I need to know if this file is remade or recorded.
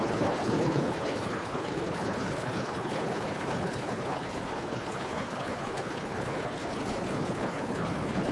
remade